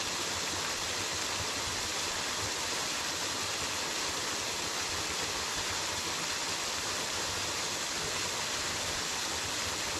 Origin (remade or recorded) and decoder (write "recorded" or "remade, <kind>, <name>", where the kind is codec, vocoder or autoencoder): recorded